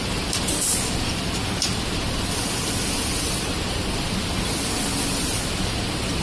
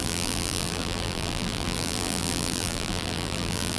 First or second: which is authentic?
first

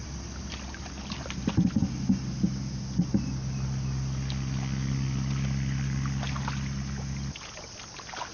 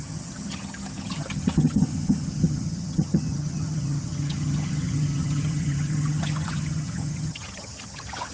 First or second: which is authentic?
first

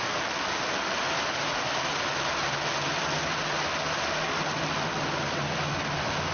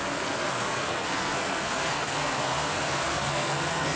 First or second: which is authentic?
first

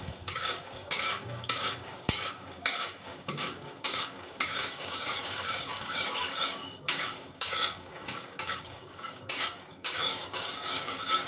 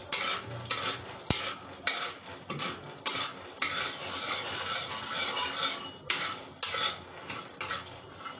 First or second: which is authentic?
second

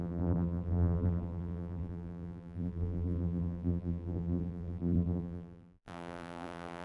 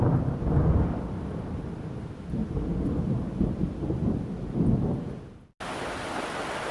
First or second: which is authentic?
second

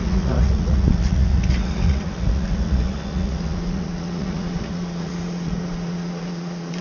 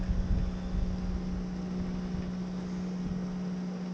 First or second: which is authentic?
second